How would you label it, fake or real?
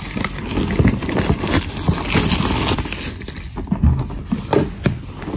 real